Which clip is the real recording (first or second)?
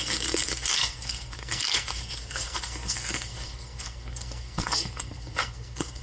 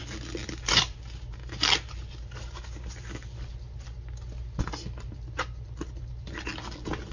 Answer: second